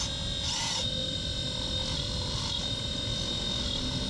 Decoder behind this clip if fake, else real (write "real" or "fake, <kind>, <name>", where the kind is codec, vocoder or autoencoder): real